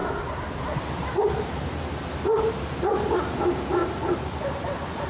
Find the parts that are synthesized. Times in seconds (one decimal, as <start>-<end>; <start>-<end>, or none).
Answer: 2.7-3.8